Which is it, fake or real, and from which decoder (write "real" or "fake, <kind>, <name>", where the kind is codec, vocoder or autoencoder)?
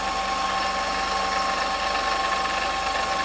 real